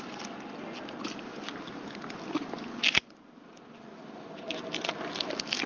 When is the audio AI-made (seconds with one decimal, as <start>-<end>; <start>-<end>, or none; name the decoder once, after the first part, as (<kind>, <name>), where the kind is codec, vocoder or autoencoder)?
none